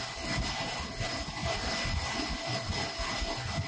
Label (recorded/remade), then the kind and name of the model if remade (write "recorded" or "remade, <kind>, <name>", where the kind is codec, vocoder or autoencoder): recorded